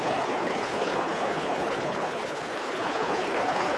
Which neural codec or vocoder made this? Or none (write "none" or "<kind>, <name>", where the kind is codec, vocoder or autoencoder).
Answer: codec, HILCodec